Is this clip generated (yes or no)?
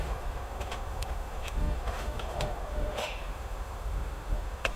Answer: yes